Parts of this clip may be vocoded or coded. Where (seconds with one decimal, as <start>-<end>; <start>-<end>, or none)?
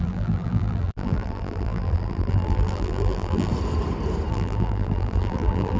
0.0-3.5; 4.3-5.8